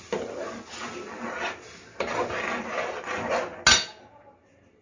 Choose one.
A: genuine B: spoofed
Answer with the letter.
A